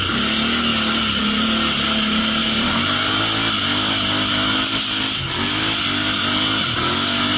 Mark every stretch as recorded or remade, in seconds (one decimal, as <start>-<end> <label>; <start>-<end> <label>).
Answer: 0.0-2.4 recorded; 2.4-3.2 remade; 3.2-7.4 recorded